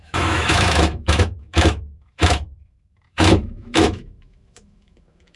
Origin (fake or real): fake